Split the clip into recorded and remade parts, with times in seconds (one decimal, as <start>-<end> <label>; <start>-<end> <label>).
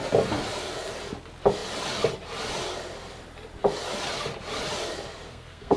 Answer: 0.0-5.3 recorded; 5.3-5.8 remade